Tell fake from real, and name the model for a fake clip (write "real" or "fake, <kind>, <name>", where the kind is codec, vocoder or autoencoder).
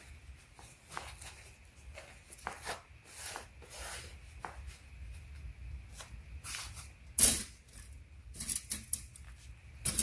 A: real